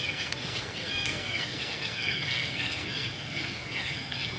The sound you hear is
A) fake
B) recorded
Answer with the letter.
A